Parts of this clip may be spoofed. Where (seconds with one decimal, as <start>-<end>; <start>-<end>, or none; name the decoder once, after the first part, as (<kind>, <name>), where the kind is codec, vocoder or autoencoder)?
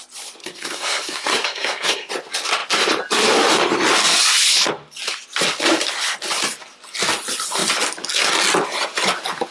0.4-2.1 (codec, SNAC)